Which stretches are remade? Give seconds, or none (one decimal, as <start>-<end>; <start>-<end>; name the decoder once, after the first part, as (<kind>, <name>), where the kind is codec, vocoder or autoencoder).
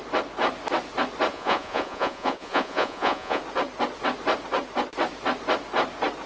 1.3-3.4 (vocoder, Vocos)